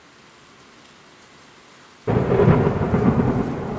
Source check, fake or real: real